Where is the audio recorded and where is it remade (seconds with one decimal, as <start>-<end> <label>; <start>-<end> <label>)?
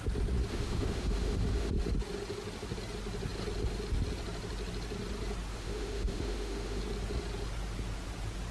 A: 0.0-0.5 recorded; 0.5-1.7 remade; 1.7-5.5 recorded; 5.5-6.8 remade; 6.8-8.5 recorded